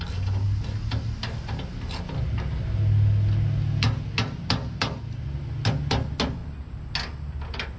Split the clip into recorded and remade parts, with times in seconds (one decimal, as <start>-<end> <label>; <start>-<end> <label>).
0.0-7.8 recorded